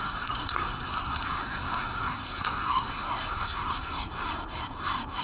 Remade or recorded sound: remade